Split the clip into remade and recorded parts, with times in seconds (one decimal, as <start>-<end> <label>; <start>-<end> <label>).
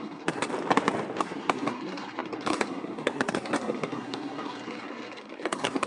0.0-0.5 remade; 0.5-1.2 recorded; 1.2-5.9 remade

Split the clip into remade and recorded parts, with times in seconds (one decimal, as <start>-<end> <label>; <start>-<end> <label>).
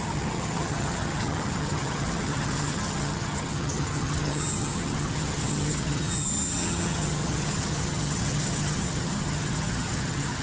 0.0-10.4 remade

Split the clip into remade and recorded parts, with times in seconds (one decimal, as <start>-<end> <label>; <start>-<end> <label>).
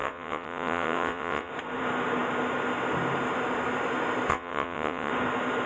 0.0-1.5 remade; 1.5-4.3 recorded; 4.3-5.1 remade; 5.1-5.7 recorded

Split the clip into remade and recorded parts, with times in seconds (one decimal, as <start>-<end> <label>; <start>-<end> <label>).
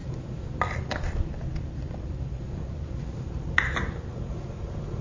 0.0-4.1 recorded; 4.1-5.0 remade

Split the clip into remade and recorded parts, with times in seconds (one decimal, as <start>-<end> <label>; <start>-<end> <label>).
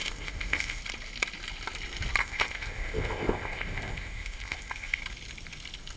0.0-0.8 remade; 0.8-2.2 recorded; 2.2-5.0 remade; 5.0-6.0 recorded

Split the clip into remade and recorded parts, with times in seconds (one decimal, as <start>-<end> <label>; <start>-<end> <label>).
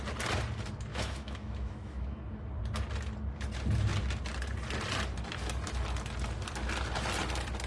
0.0-0.9 recorded; 0.9-2.2 remade; 2.2-7.7 recorded